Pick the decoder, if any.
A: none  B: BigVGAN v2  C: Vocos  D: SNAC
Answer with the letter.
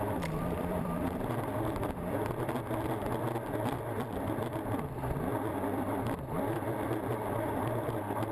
B